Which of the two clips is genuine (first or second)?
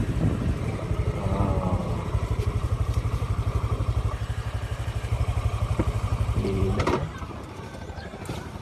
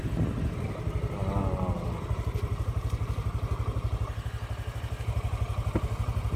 second